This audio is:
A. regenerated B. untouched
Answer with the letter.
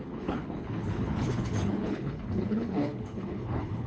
A